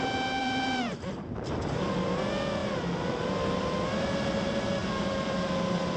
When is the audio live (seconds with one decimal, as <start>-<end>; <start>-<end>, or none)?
0.0-0.4; 1.9-2.6; 3.6-4.8